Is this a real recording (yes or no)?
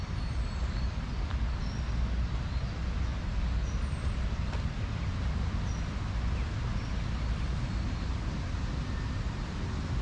yes